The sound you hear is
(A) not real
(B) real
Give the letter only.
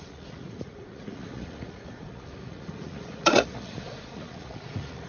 A